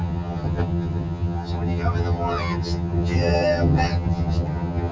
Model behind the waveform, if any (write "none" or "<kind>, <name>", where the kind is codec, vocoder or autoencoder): vocoder, HiFi-GAN